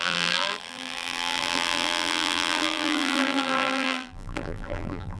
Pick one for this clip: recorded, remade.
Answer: remade